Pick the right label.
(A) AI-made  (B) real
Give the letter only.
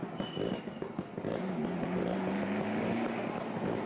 B